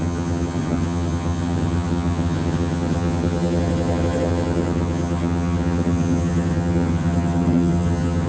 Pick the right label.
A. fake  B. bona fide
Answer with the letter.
A